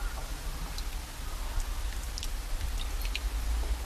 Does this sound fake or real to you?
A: real